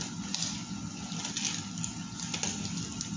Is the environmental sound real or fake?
real